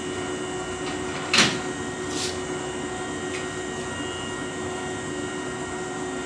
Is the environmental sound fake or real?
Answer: real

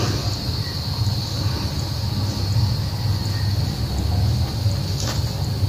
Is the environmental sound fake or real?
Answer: real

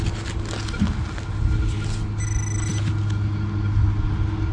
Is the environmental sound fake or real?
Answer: real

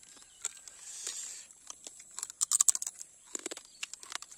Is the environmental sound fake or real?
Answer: real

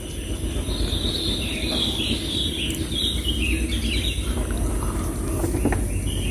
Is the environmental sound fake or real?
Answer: real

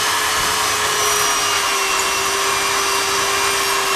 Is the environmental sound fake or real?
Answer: real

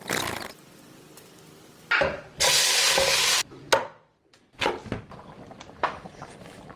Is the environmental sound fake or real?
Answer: real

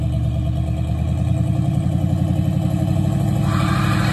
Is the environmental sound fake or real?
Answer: real